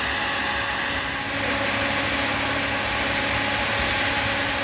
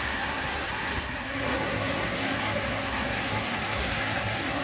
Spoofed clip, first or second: second